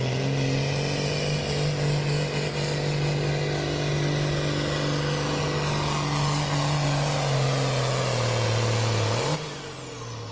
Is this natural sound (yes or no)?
yes